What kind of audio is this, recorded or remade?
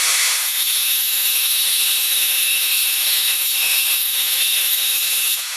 remade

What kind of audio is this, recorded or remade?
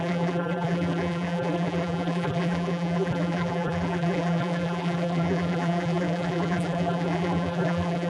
remade